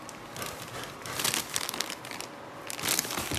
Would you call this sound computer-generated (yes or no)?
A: no